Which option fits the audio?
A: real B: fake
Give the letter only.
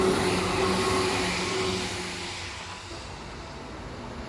A